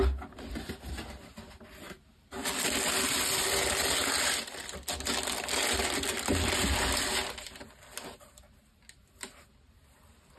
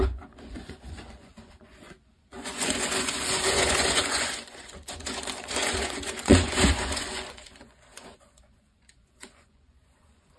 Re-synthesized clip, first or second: second